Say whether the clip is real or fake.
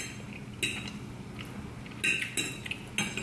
real